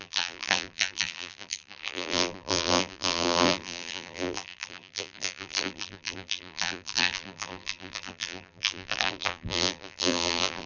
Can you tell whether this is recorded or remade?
remade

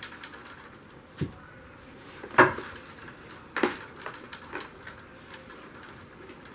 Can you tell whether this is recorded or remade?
remade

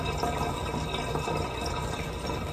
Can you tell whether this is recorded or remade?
remade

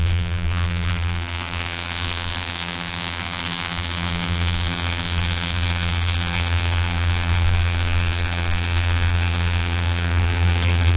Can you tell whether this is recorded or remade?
remade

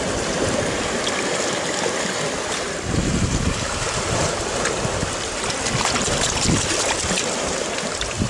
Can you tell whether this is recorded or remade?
recorded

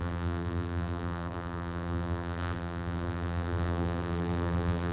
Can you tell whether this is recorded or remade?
remade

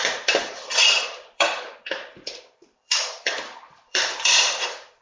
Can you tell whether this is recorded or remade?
remade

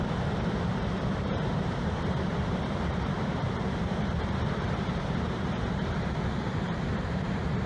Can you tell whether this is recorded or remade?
remade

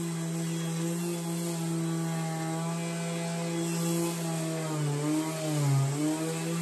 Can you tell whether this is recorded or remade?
recorded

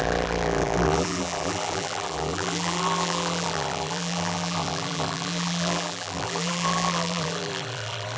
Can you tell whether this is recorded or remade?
remade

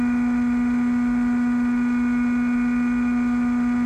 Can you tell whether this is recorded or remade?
recorded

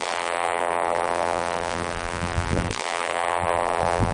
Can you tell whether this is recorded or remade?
remade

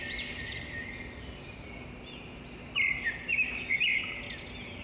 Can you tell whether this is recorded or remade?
recorded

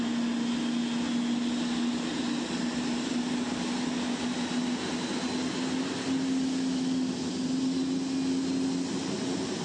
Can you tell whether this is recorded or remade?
recorded